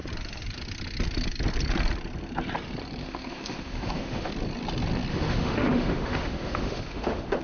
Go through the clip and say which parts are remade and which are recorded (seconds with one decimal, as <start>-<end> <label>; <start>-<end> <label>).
0.0-3.0 recorded; 3.0-4.3 remade; 4.3-5.1 recorded; 5.1-7.4 remade